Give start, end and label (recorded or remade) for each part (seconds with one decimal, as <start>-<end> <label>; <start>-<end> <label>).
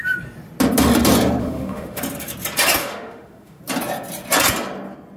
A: 0.0-1.4 recorded; 1.4-2.0 remade; 2.0-2.8 recorded; 2.8-3.6 remade; 3.6-5.2 recorded